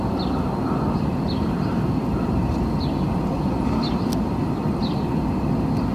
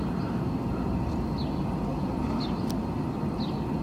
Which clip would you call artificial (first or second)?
first